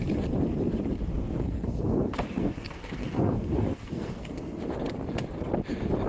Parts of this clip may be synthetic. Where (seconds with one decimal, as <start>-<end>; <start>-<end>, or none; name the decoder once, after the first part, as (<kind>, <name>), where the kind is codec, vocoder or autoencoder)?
1.1-4.8 (codec, SNAC)